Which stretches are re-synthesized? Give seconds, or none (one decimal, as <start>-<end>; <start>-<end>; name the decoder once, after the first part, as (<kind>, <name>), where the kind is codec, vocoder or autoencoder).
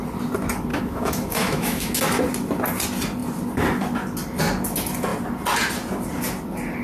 0.7-2.0 (autoencoder, DAC-VAE)